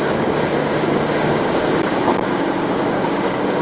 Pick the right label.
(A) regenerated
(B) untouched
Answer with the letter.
A